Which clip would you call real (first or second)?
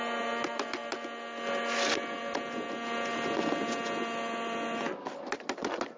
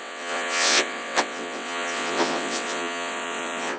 first